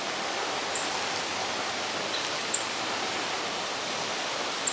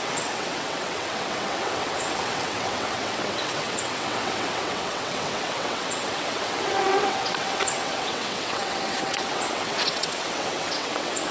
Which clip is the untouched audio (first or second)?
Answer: first